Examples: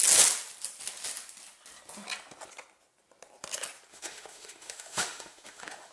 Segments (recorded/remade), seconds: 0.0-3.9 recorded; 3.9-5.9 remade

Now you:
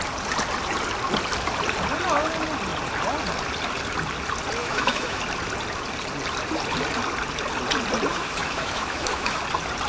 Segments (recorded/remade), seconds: 0.0-4.6 recorded; 4.6-5.2 remade; 5.2-8.1 recorded; 8.1-9.4 remade; 9.4-9.9 recorded

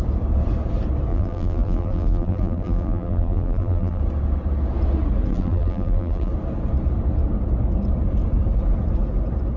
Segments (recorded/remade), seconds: 0.0-1.1 recorded; 1.1-4.0 remade; 4.0-5.3 recorded; 5.3-6.3 remade; 6.3-9.6 recorded

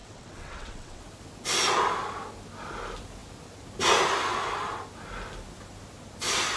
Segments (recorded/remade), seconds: 0.0-1.0 remade; 1.0-6.6 recorded

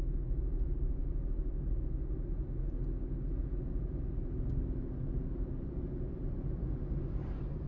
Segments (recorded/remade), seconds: 0.0-7.7 recorded

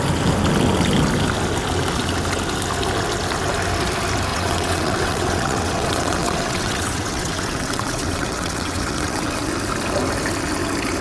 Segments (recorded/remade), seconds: 0.0-4.3 recorded; 4.3-9.5 remade; 9.5-11.0 recorded